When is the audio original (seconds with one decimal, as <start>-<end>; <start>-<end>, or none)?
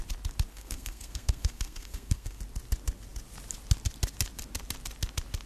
0.0-0.5; 2.4-5.5